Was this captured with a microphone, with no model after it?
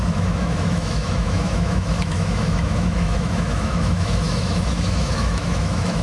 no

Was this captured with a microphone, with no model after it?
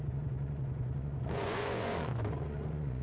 no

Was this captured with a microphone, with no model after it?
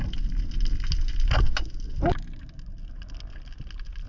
yes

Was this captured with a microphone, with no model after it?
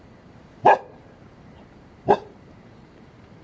no